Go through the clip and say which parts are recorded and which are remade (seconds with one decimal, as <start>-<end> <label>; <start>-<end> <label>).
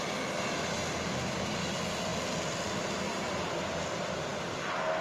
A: 0.0-5.0 recorded